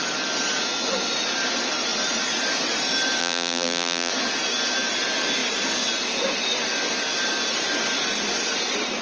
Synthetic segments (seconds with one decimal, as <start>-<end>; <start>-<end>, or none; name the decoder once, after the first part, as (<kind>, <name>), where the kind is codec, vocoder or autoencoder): 3.2-4.1 (vocoder, BigVGAN v2)